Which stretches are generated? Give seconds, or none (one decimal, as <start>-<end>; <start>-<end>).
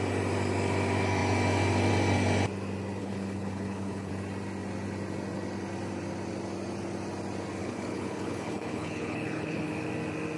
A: 3.0-4.1; 7.6-9.7